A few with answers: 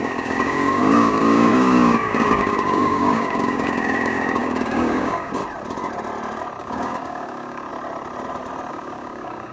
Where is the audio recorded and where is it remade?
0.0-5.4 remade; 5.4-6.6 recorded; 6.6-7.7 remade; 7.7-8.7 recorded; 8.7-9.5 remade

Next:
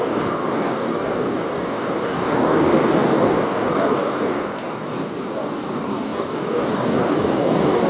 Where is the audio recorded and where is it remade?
0.0-7.9 remade

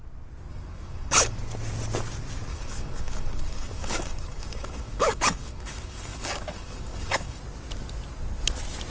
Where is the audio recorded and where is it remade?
0.0-0.5 recorded; 0.5-1.4 remade; 1.4-2.5 recorded; 2.5-7.4 remade; 7.4-8.9 recorded

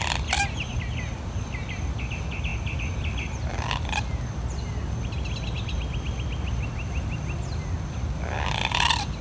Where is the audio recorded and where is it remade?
0.0-9.2 recorded

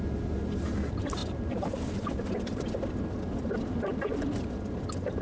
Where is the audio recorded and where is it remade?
0.0-5.2 recorded